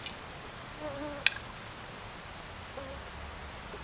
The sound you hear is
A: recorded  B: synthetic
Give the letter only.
A